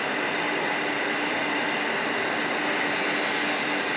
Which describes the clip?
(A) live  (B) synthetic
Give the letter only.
A